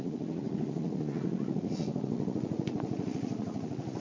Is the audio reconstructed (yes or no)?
yes